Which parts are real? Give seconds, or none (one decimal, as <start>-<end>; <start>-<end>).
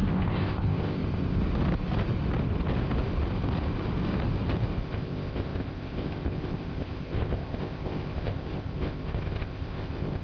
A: 1.4-4.8